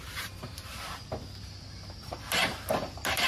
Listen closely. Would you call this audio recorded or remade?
recorded